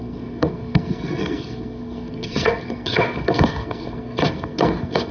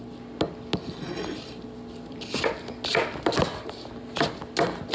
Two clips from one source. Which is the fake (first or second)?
first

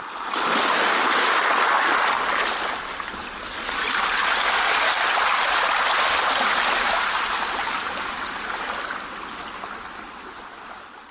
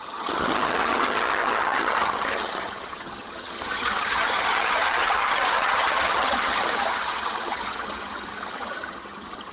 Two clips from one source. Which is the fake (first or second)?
second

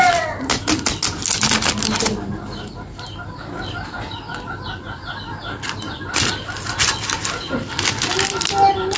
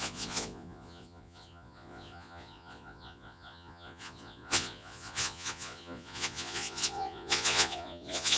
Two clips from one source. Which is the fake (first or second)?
second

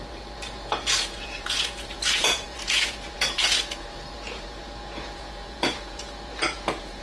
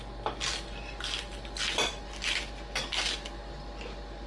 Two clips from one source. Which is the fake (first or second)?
first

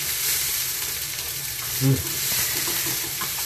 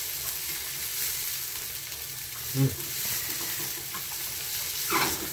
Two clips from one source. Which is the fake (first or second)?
first